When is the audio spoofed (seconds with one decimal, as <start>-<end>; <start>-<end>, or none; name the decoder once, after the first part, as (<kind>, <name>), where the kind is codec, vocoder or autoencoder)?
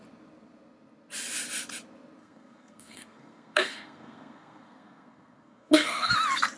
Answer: 2.2-6.1 (codec, SNAC)